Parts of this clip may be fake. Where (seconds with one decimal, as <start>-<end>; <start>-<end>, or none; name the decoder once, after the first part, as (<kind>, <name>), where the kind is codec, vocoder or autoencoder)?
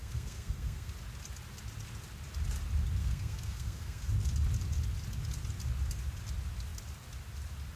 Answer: 0.0-0.9 (codec, SNAC); 3.0-4.1